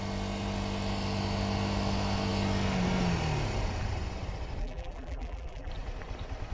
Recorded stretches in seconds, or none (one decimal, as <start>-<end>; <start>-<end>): 0.0-4.6; 5.7-6.5